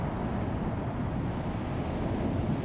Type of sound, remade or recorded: recorded